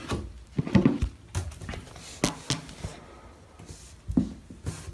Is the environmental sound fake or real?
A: real